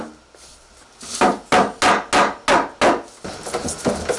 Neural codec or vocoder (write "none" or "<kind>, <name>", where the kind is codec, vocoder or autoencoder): none